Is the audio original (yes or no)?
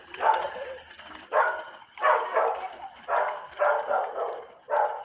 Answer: yes